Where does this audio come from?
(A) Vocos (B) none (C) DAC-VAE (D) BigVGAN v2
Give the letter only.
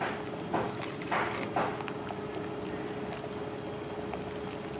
B